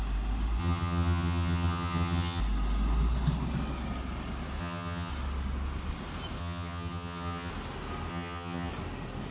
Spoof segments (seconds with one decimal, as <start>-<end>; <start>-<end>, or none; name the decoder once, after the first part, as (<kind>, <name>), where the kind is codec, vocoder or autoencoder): 0.6-2.4 (vocoder, HiFi-GAN); 4.6-5.1; 6.4-7.5; 8.1-8.7